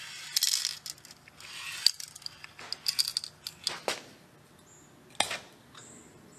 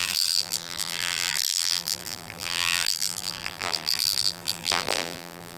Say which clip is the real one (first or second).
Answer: first